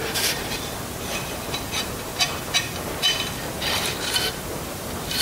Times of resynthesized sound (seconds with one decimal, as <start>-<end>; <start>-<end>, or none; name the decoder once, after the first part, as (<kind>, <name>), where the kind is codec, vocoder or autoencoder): 0.0-2.1 (vocoder, BigVGAN v2); 3.4-5.2